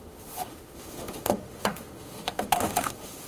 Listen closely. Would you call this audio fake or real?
fake